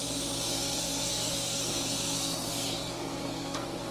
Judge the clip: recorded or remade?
remade